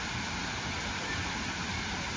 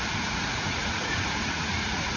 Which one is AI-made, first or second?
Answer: second